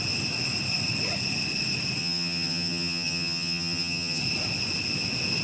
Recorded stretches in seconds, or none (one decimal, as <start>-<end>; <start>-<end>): 0.0-2.0; 4.2-5.4